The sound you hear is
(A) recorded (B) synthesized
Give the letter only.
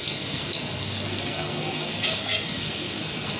B